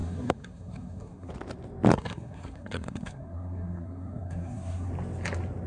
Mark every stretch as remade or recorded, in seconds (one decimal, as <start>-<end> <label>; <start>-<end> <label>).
0.0-1.3 remade; 1.3-1.9 recorded; 1.9-4.9 remade; 4.9-5.7 recorded